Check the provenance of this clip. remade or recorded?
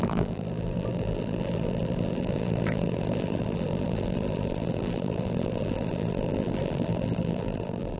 remade